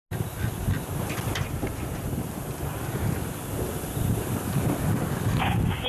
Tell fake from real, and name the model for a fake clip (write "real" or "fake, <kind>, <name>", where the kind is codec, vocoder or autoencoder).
real